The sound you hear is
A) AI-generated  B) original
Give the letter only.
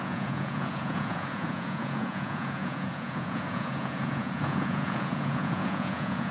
A